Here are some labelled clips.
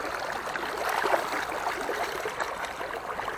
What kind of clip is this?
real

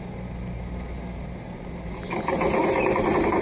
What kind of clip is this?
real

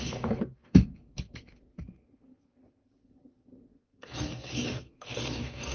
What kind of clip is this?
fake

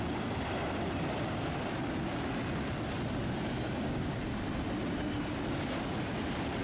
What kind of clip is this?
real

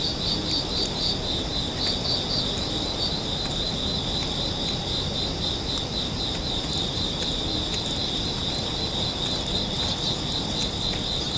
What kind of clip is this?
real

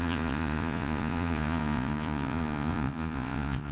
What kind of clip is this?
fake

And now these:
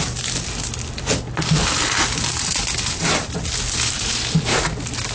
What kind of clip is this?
real